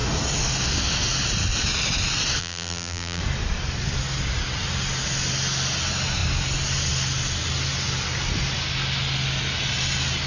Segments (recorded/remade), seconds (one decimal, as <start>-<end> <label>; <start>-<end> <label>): 0.0-2.4 recorded; 2.4-3.2 remade; 3.2-10.3 recorded